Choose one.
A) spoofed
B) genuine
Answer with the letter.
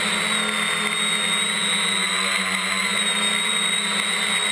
B